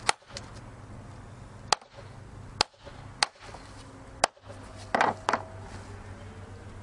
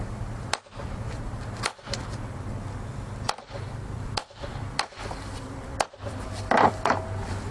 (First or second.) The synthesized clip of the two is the second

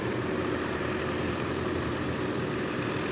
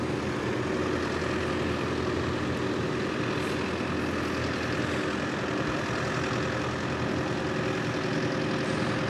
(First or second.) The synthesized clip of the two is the first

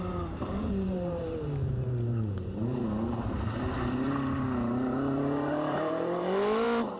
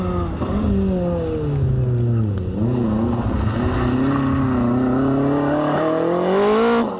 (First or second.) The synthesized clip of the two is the first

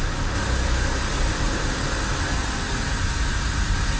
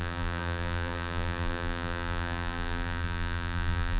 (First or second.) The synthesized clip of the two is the second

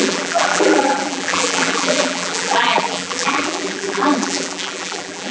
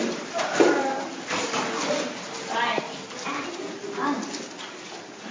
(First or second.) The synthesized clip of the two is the first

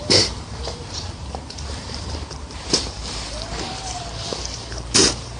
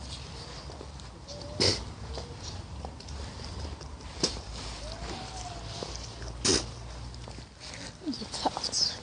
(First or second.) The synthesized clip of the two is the first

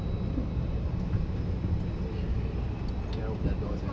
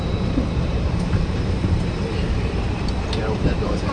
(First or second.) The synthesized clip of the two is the second